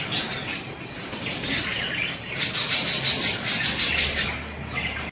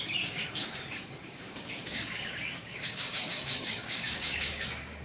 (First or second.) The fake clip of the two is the second